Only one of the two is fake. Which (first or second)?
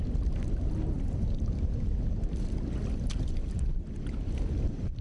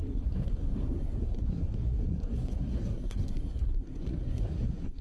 second